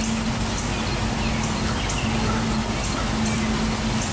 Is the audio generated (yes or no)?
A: no